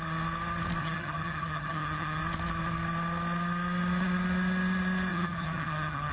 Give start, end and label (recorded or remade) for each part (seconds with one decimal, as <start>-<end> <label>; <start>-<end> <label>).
0.0-0.8 recorded; 0.8-2.2 remade; 2.2-5.1 recorded; 5.1-6.1 remade